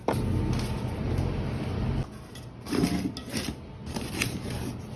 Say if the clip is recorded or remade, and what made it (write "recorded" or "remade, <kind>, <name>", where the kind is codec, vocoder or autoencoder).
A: recorded